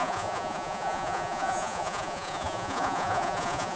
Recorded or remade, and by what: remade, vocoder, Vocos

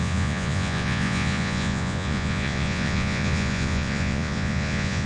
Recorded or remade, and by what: remade, vocoder, Vocos